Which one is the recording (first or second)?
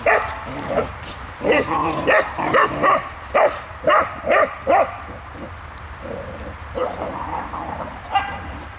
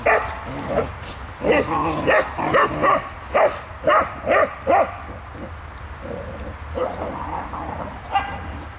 second